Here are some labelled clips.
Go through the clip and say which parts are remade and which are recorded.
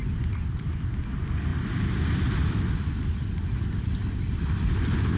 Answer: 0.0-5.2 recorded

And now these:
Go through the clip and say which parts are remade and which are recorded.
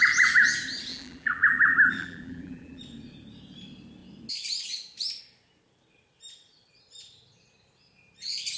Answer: 0.0-0.9 recorded; 0.9-2.8 remade; 2.8-8.6 recorded